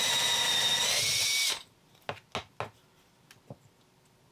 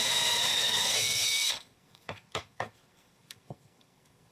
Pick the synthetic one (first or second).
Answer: second